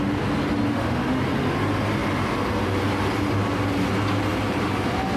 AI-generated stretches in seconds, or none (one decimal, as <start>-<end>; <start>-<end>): 0.7-1.2